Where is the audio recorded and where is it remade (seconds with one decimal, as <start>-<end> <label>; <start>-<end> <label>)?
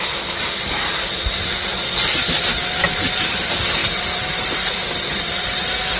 0.0-3.8 recorded; 3.8-4.7 remade; 4.7-6.0 recorded